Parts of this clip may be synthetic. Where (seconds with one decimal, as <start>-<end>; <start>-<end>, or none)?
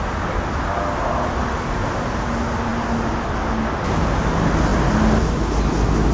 none